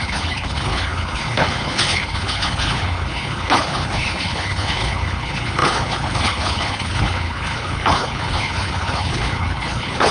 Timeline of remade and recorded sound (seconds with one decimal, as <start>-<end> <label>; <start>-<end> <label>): 0.0-10.1 remade